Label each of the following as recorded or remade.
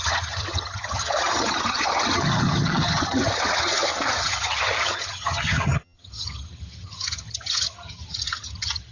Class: remade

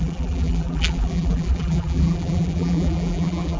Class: remade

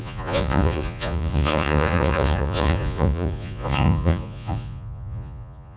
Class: remade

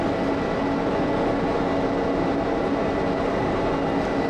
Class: recorded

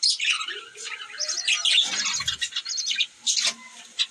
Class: recorded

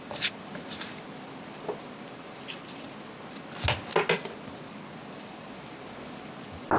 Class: recorded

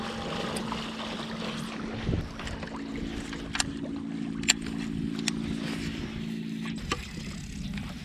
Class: recorded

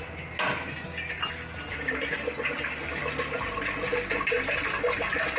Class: recorded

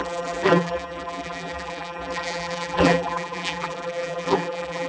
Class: remade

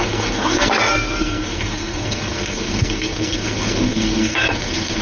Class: remade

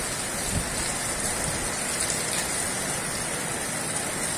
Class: recorded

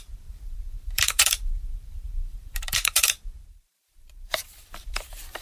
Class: remade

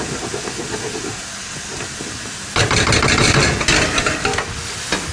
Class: recorded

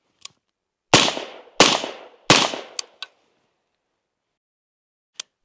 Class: recorded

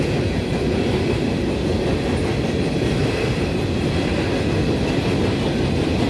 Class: recorded